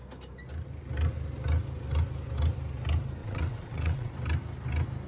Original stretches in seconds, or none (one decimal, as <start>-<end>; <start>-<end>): 0.0-3.2; 4.1-5.1